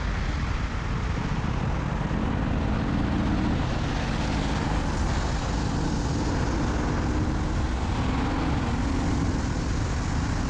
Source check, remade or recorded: recorded